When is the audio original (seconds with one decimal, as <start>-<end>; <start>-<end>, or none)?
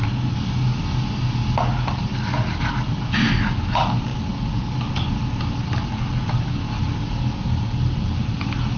0.0-8.8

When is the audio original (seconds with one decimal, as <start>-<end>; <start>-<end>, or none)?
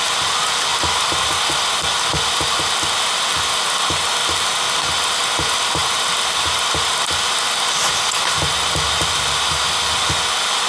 0.0-10.7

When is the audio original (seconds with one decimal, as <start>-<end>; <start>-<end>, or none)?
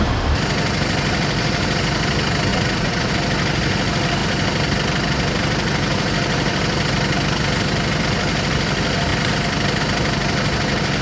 0.0-2.5; 3.1-11.0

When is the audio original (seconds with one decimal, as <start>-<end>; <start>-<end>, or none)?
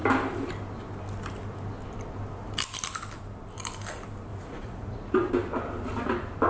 0.0-4.3; 5.3-6.5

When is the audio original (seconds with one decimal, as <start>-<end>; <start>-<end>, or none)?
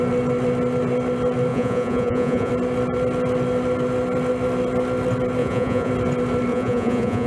0.0-1.5; 2.5-5.4; 5.9-6.5